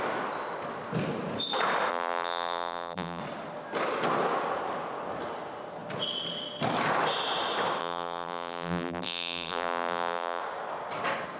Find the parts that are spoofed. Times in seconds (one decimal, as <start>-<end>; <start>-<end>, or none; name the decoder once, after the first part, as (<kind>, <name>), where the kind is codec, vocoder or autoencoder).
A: 1.9-3.2 (vocoder, BigVGAN v2); 7.8-10.4